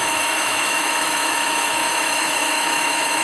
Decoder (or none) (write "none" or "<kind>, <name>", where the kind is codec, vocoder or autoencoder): autoencoder, DAC-VAE